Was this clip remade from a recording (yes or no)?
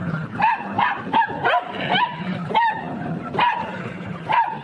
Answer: yes